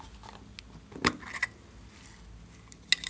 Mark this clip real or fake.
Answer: real